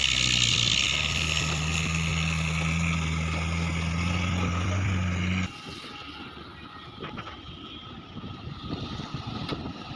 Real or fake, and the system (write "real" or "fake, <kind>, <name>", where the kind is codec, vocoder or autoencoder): real